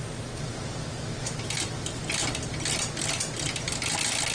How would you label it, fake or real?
real